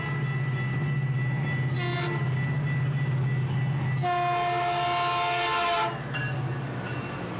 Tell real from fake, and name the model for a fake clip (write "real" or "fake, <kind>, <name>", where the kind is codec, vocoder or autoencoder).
real